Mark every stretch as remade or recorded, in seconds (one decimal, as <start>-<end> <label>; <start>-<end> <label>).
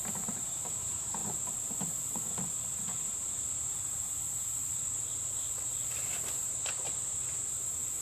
0.0-1.2 remade; 1.2-2.5 recorded; 2.5-8.0 remade